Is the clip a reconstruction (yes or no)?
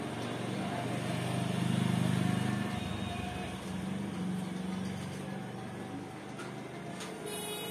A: no